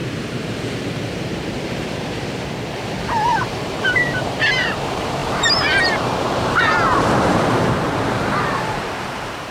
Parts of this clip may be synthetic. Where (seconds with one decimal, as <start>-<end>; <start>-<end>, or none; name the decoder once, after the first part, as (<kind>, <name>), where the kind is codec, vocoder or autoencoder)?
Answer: 0.0-9.5 (vocoder, BigVGAN v2)